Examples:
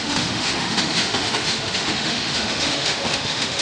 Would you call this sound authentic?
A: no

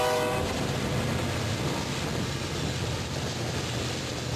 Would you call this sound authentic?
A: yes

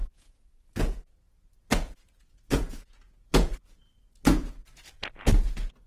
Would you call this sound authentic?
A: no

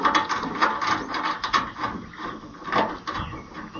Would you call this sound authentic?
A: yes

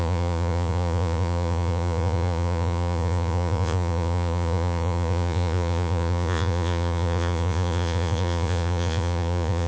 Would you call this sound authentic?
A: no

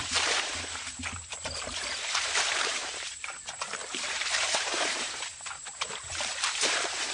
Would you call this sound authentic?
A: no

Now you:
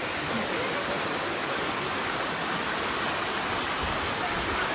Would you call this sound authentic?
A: yes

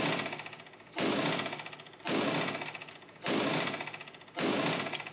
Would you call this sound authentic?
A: yes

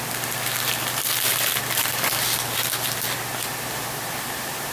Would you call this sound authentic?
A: yes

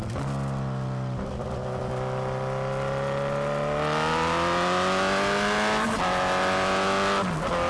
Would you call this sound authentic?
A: yes